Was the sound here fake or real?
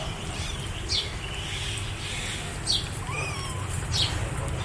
fake